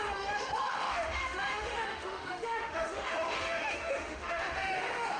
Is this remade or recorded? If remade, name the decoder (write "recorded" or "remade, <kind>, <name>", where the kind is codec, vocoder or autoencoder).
remade, autoencoder, DAC-VAE